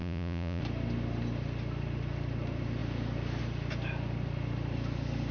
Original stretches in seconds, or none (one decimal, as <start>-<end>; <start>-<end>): 0.6-5.3